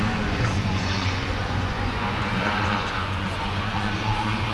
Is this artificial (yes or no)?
yes